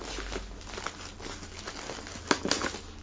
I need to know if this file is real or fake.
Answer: real